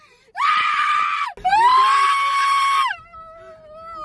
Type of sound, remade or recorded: recorded